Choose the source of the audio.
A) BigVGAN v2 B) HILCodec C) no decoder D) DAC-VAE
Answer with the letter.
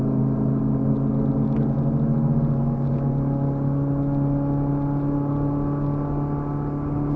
C